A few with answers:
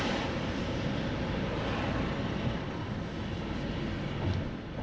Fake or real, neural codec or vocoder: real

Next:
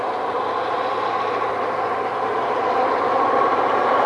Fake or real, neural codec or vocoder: real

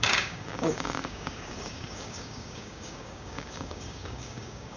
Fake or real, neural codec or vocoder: fake, codec, DAC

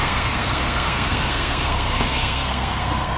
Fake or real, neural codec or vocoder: fake, codec, SNAC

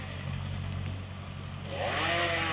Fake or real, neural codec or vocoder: real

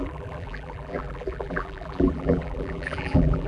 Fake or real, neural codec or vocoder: fake, vocoder, BigVGAN v2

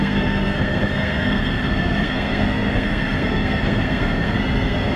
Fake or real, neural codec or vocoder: fake, codec, SNAC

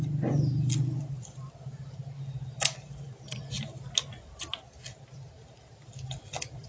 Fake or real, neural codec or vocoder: real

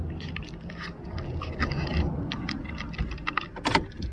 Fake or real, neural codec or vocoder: real